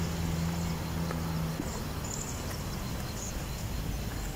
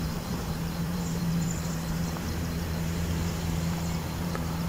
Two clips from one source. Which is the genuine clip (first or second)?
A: first